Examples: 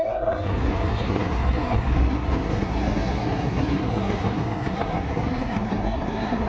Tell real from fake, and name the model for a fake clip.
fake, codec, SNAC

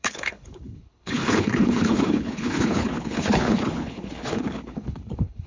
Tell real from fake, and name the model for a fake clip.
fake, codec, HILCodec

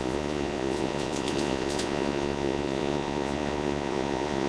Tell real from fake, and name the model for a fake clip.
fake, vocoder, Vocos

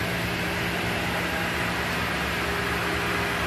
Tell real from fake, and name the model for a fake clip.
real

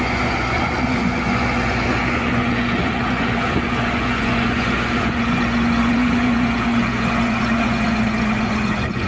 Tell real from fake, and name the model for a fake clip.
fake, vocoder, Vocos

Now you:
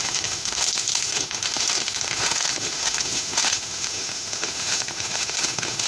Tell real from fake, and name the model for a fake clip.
fake, autoencoder, DAC-VAE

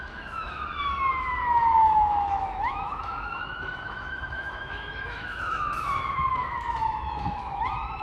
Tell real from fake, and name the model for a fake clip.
fake, autoencoder, DAC-VAE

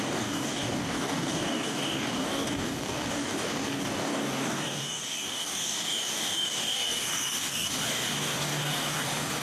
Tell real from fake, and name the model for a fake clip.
fake, codec, DAC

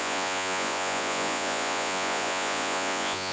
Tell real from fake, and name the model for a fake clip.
fake, vocoder, Vocos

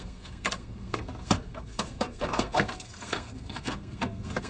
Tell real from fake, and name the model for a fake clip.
fake, codec, SNAC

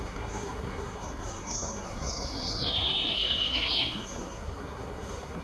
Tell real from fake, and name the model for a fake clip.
fake, codec, SNAC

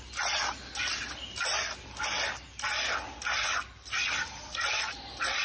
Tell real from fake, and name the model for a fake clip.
real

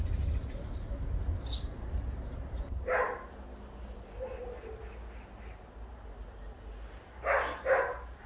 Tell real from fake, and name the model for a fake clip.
real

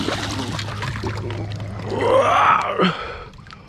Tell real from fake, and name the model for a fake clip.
real